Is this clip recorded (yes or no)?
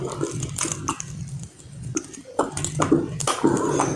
yes